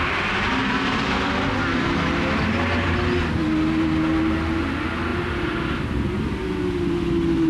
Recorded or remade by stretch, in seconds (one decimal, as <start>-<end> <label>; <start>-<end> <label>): 0.0-7.5 recorded